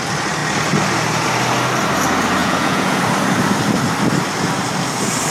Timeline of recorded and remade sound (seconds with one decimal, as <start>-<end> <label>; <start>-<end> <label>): 0.0-2.4 recorded; 2.4-3.0 remade; 3.0-5.3 recorded